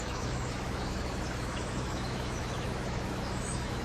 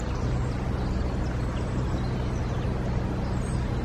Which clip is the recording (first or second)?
second